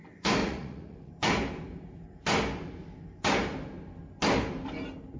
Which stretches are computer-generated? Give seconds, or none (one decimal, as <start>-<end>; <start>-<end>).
0.4-1.1